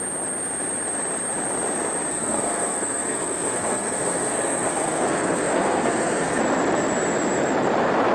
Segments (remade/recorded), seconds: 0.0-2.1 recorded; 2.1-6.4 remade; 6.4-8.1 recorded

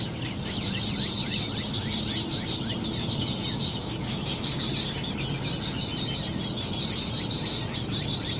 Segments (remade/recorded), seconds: 0.0-3.7 recorded; 3.7-4.6 remade; 4.6-8.4 recorded

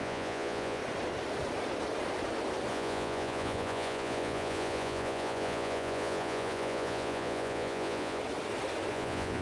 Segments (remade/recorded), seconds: 0.0-0.8 remade; 0.8-2.7 recorded; 2.7-8.2 remade; 8.2-8.9 recorded; 8.9-9.4 remade

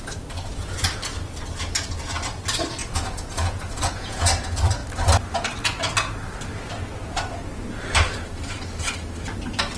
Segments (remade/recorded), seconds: 0.0-2.8 recorded; 2.8-4.3 remade; 4.3-9.8 recorded

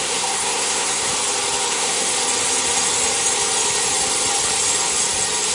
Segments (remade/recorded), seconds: 0.0-1.1 remade; 1.1-1.7 recorded; 1.7-2.1 remade; 2.1-5.5 recorded

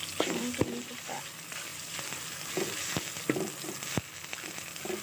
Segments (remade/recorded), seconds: 0.0-5.0 recorded